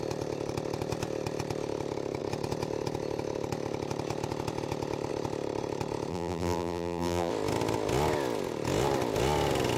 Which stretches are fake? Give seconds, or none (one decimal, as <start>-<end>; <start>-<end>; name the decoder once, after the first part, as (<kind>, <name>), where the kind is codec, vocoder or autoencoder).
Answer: 6.1-7.3 (vocoder, BigVGAN v2)

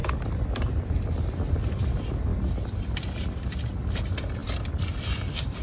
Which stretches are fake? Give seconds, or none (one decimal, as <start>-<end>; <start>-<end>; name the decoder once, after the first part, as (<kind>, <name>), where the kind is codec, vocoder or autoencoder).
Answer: 0.0-1.5 (vocoder, BigVGAN v2); 4.4-5.6

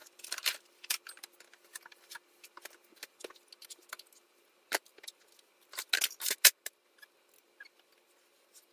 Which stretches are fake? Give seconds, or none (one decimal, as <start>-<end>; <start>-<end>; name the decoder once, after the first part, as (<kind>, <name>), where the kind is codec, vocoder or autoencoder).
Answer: 0.0-1.0 (vocoder, BigVGAN v2)